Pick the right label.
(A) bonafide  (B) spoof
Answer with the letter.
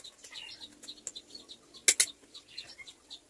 A